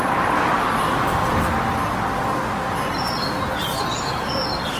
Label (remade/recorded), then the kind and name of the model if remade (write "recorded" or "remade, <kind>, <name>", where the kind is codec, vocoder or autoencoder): recorded